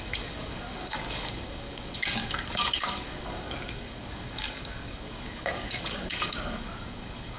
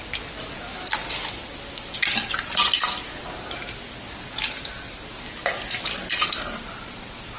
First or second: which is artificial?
first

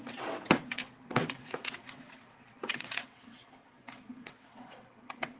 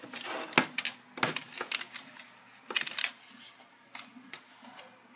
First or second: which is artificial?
first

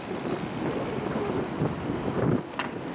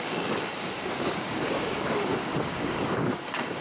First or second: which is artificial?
second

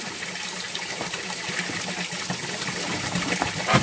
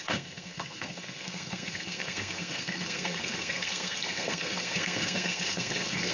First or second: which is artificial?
second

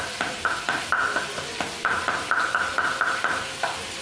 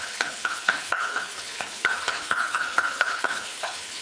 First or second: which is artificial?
second